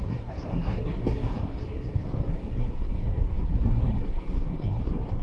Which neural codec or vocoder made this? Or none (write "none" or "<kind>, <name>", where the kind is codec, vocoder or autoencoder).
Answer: codec, SNAC